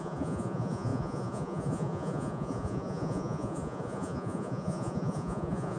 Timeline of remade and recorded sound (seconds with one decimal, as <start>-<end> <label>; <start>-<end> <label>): 0.0-5.8 remade